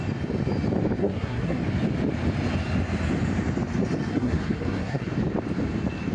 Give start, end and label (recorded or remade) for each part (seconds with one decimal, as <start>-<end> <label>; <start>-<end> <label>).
0.0-1.0 recorded; 1.0-1.6 remade; 1.6-4.1 recorded; 4.1-5.1 remade; 5.1-6.1 recorded